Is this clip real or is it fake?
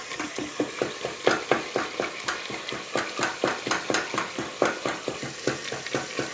real